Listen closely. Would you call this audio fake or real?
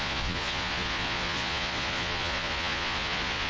fake